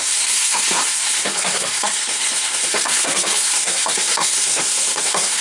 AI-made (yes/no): yes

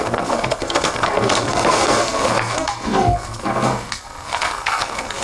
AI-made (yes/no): yes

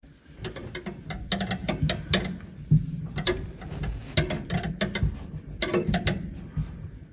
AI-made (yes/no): no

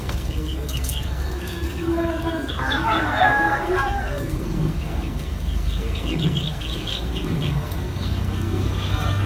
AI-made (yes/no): yes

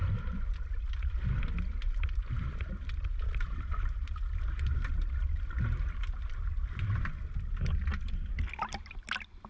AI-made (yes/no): no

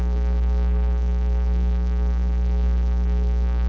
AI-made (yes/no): yes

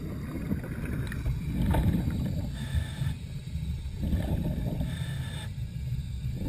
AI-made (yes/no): no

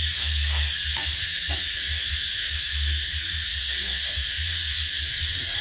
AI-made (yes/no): yes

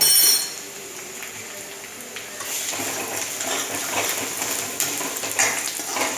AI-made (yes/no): no